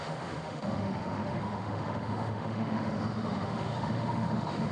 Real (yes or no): no